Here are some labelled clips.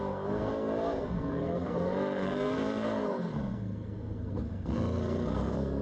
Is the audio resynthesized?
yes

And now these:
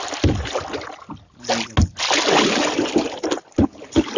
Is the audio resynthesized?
no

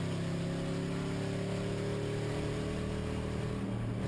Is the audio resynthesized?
no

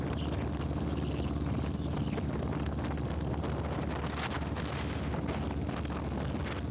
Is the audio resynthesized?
no